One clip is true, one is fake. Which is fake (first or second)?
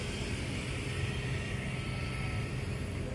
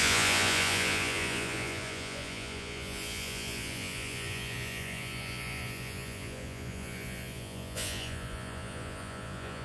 second